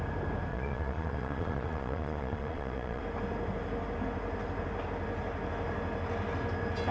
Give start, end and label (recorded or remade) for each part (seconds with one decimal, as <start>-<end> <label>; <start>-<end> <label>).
0.0-0.5 recorded; 0.5-3.0 remade; 3.0-6.9 recorded